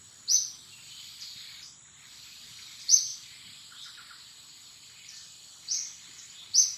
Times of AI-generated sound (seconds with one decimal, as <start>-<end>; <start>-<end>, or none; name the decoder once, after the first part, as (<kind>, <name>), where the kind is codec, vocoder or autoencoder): 0.8-6.8 (vocoder, BigVGAN v2)